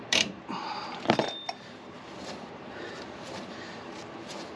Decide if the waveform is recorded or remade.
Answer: remade